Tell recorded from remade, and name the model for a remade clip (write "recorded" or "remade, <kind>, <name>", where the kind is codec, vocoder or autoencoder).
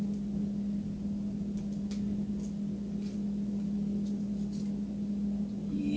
recorded